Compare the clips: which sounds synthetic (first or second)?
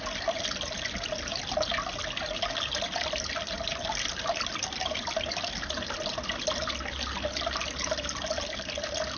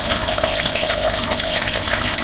second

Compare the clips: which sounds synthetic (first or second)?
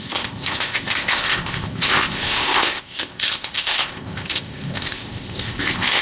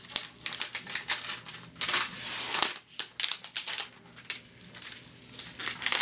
first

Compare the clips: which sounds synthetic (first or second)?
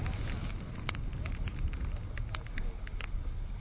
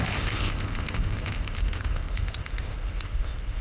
second